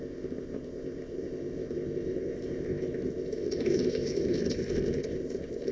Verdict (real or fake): fake